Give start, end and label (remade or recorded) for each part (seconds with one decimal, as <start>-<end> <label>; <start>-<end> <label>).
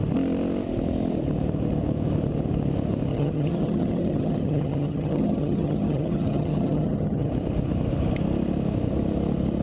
0.0-3.1 recorded; 3.1-7.3 remade; 7.3-9.6 recorded